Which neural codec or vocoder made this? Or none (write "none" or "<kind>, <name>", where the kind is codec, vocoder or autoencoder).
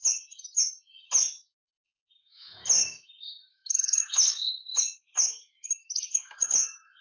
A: autoencoder, DAC-VAE